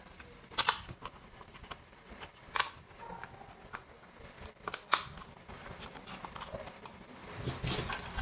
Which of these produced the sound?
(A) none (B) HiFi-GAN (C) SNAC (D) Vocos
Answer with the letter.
A